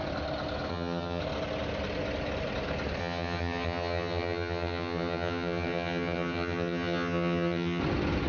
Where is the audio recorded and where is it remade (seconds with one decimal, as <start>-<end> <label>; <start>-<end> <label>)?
0.0-0.7 recorded; 0.7-1.2 remade; 1.2-3.0 recorded; 3.0-7.8 remade; 7.8-8.3 recorded